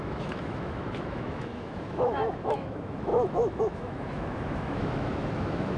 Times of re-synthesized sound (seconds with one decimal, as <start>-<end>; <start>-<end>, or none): 0.0-5.8